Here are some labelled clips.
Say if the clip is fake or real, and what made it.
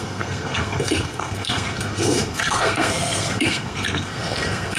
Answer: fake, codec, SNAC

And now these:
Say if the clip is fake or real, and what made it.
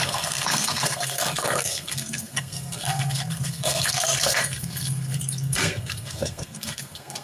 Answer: fake, codec, SNAC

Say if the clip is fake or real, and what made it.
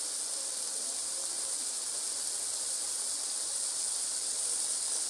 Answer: real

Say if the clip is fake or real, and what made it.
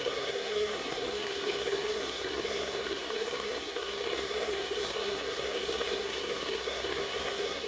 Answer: fake, codec, SNAC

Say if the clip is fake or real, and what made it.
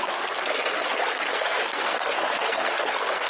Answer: fake, codec, SNAC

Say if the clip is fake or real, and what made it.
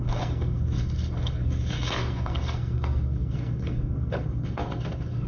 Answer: fake, codec, SNAC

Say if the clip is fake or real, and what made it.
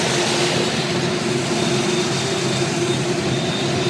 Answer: real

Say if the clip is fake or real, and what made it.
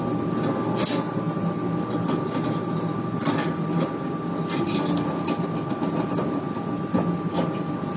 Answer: real